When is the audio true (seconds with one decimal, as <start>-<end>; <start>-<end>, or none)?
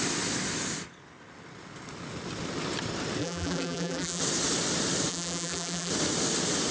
0.0-3.2; 4.2-5.1; 5.9-6.7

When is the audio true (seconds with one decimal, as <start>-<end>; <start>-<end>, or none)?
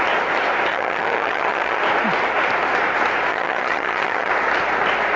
0.0-0.7; 1.8-3.3; 4.3-5.2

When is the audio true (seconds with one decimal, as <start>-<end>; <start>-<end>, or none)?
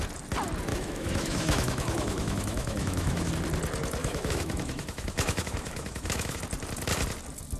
0.0-0.7; 3.3-4.0; 6.4-7.6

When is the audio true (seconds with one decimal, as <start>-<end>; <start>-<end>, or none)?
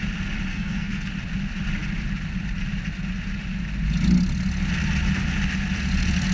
0.0-0.5; 1.1-6.3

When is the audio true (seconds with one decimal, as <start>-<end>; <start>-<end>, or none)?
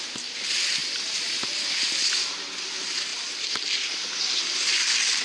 0.0-5.2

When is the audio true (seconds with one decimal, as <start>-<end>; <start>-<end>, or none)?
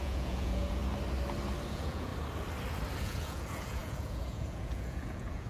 0.8-1.7; 2.1-3.0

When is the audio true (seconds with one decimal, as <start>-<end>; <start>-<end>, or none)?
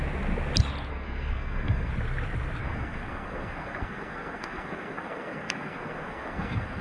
0.0-0.9; 1.9-2.6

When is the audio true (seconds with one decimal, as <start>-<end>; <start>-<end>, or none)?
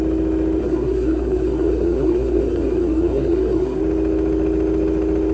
0.0-0.6; 3.8-5.3